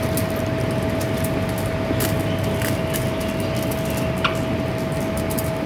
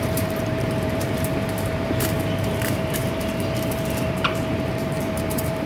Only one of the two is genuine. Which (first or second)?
first